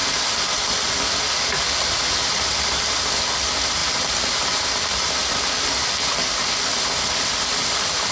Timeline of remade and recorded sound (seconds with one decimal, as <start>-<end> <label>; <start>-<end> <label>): 0.0-3.3 recorded; 3.3-5.2 remade; 5.2-6.4 recorded; 6.4-8.1 remade